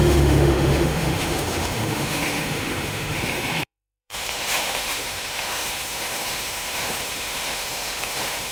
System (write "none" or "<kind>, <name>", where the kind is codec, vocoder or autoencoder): autoencoder, DAC-VAE